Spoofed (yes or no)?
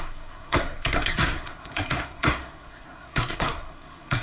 yes